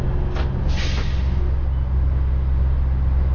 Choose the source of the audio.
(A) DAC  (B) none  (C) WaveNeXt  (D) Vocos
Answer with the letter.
B